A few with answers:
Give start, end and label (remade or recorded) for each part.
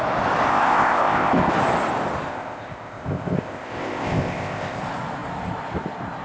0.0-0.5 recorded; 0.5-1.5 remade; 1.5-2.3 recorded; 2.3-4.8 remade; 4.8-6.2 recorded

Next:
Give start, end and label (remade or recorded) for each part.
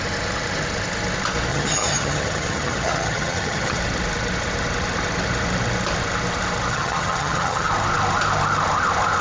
0.0-1.5 recorded; 1.5-3.8 remade; 3.8-6.7 recorded; 6.7-7.7 remade; 7.7-9.2 recorded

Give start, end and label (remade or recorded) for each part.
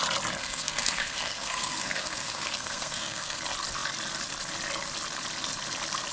0.0-0.4 recorded; 0.4-3.4 remade; 3.4-6.1 recorded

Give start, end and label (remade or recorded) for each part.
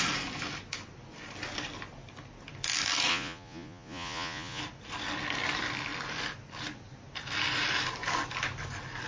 0.0-3.1 recorded; 3.1-4.6 remade; 4.6-9.1 recorded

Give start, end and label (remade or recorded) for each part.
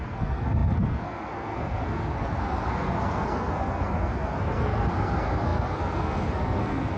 0.0-7.0 remade